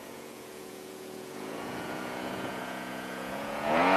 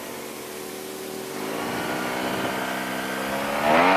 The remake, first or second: first